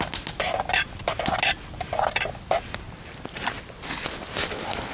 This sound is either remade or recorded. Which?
recorded